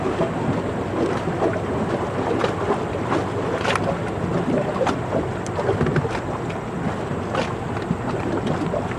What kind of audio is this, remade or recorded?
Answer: recorded